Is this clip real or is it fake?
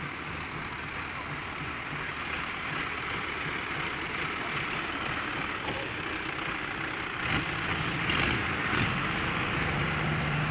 real